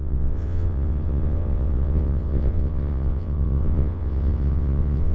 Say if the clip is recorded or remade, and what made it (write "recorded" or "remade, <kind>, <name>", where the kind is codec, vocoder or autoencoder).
remade, vocoder, WaveNeXt